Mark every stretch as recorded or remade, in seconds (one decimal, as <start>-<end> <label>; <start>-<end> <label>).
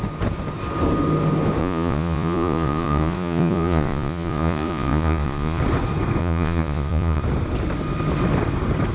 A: 0.0-1.6 recorded; 1.6-5.6 remade; 5.6-6.2 recorded; 6.2-7.2 remade; 7.2-8.9 recorded